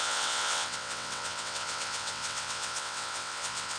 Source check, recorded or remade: remade